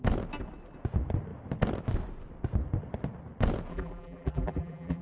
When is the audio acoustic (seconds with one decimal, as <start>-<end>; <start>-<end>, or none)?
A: 0.0-3.7